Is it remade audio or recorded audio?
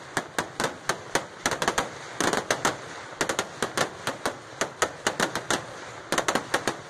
recorded